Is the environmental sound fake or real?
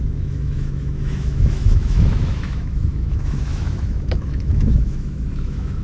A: fake